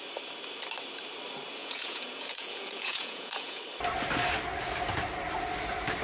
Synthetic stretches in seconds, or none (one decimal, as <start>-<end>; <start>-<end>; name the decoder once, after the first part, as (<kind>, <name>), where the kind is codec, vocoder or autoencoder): 1.6-3.6 (vocoder, Vocos)